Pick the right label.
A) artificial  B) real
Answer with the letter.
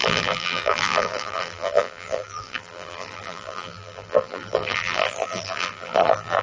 A